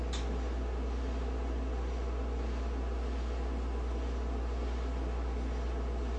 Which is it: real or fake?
real